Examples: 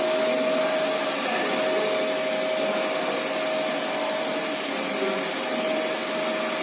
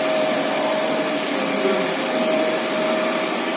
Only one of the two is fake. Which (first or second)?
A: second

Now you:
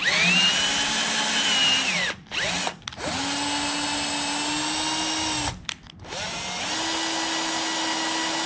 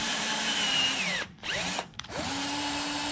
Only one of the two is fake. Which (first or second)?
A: second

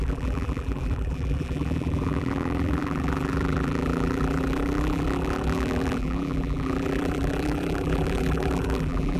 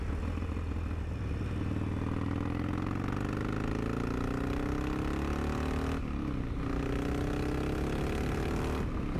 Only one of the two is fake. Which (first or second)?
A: first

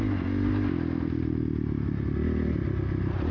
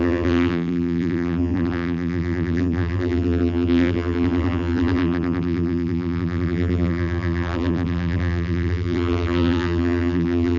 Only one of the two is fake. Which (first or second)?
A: second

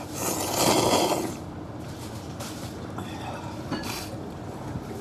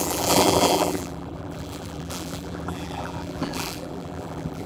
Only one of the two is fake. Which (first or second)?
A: second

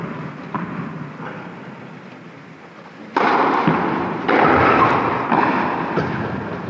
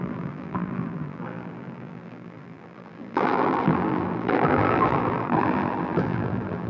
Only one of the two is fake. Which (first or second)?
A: second